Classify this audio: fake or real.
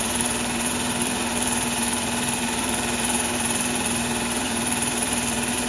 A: fake